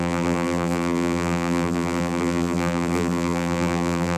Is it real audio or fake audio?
fake